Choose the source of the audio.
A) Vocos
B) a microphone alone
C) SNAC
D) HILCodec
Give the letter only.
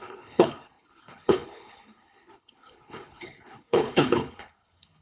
D